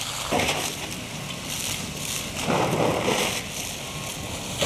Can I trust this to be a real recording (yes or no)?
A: yes